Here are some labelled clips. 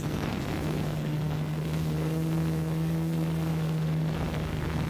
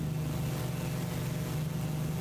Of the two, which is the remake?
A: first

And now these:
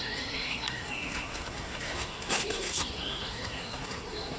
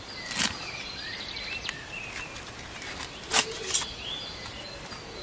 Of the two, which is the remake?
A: first